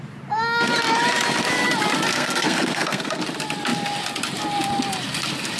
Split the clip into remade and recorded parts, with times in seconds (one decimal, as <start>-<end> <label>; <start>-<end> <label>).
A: 0.0-2.1 recorded; 2.1-3.2 remade; 3.2-5.6 recorded